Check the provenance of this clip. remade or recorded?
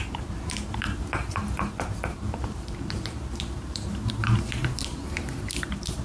remade